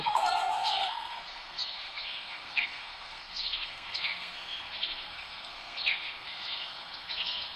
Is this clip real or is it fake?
fake